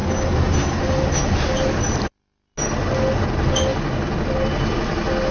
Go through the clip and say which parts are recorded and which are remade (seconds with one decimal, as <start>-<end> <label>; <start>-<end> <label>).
0.0-5.3 recorded

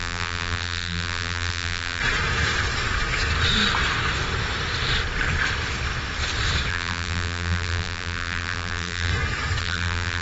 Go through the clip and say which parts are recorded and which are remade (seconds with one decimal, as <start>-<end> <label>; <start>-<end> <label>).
0.0-2.0 remade; 2.0-6.7 recorded; 6.7-9.1 remade; 9.1-9.6 recorded; 9.6-10.2 remade

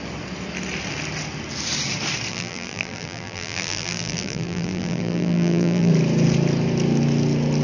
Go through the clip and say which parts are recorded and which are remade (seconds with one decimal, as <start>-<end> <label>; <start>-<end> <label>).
0.0-2.3 recorded; 2.3-5.9 remade; 5.9-7.6 recorded

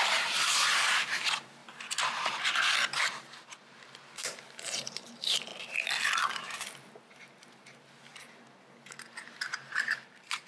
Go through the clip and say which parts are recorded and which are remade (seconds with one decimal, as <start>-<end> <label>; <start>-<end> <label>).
0.0-1.6 remade; 1.6-3.0 recorded; 3.0-5.5 remade; 5.5-7.5 recorded; 7.5-8.1 remade; 8.1-9.5 recorded; 9.5-10.5 remade

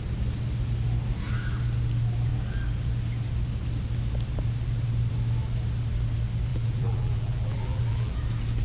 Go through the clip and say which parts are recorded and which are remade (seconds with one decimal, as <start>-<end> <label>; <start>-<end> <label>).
0.0-6.5 recorded; 6.5-8.2 remade; 8.2-8.6 recorded

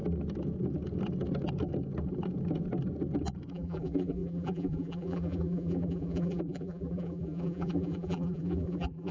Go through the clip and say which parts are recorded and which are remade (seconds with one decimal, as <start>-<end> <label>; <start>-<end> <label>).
0.0-3.5 recorded; 3.5-9.1 remade

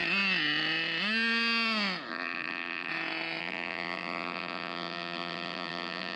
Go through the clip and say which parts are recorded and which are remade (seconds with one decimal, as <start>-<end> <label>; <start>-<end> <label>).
0.0-2.1 recorded; 2.1-2.9 remade; 2.9-3.4 recorded; 3.4-6.2 remade

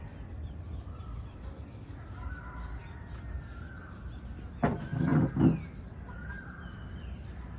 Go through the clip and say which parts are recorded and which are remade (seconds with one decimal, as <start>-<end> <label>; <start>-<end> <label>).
0.0-2.8 remade; 2.8-3.6 recorded; 3.6-7.6 remade